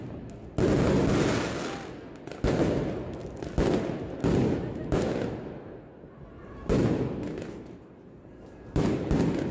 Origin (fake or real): real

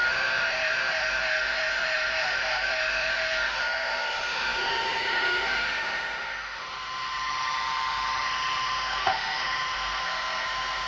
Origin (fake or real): fake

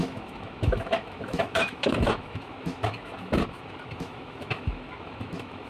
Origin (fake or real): fake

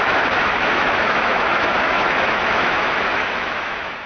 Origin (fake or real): fake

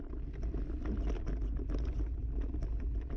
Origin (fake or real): real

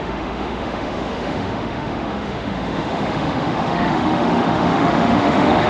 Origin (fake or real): fake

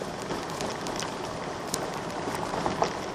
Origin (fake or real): real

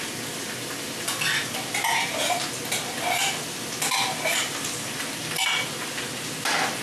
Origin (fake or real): real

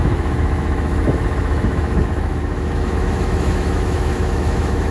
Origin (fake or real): fake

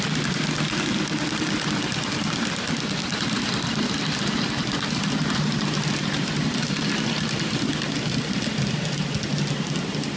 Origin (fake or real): real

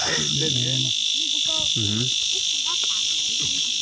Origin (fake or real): real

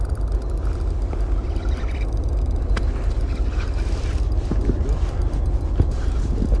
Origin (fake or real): real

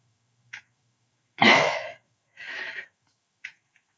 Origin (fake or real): fake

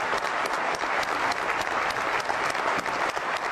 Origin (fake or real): real